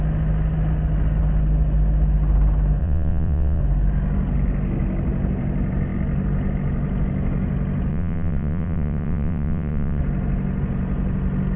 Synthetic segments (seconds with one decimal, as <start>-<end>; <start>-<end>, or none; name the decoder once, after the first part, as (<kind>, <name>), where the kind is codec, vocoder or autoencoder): 2.8-3.6 (vocoder, WaveNeXt); 7.9-10.0